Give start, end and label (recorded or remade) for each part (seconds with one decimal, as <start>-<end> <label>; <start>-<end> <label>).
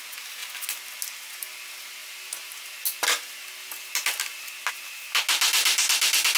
0.0-6.4 recorded